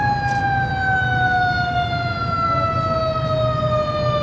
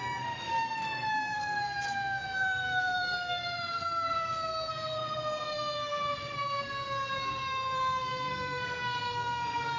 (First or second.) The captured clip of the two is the first